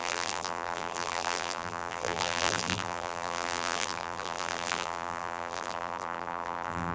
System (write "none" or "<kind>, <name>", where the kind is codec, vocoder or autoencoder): vocoder, BigVGAN v2